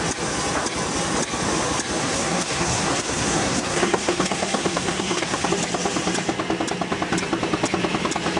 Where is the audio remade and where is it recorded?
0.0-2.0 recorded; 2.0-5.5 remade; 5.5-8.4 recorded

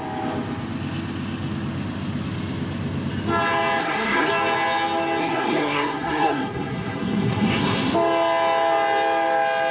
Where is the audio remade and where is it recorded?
0.0-3.8 recorded; 3.8-4.3 remade; 4.3-5.2 recorded; 5.2-7.9 remade; 7.9-9.7 recorded

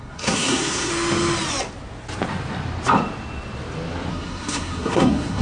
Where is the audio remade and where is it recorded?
0.0-0.9 remade; 0.9-4.1 recorded; 4.1-5.4 remade

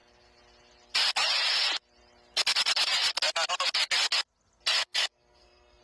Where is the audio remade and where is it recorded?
0.0-4.8 recorded; 4.8-5.8 remade

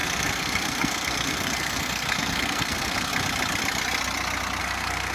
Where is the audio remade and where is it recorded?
0.0-3.1 remade; 3.1-4.6 recorded; 4.6-5.1 remade